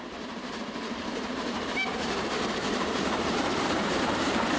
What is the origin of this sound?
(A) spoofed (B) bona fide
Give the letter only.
A